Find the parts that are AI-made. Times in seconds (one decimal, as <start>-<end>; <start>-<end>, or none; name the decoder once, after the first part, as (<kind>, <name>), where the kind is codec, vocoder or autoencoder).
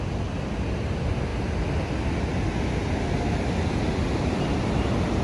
none